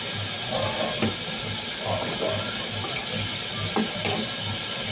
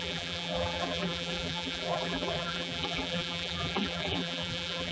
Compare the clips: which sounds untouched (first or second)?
first